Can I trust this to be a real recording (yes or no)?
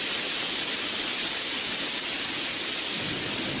yes